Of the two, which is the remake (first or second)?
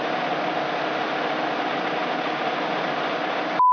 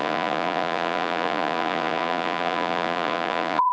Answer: second